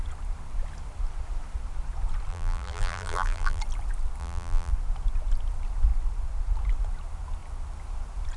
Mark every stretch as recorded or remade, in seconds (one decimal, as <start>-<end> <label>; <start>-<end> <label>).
0.0-2.3 recorded; 2.3-3.6 remade; 3.6-4.2 recorded; 4.2-4.7 remade; 4.7-8.4 recorded